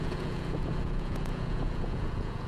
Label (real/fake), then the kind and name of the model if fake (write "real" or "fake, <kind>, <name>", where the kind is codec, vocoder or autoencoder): fake, vocoder, Vocos